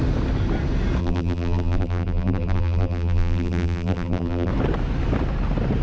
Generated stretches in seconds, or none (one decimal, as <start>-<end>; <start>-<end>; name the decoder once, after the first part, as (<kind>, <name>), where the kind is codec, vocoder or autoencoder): 1.0-4.5 (vocoder, BigVGAN v2)